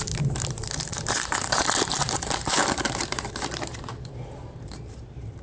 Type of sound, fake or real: fake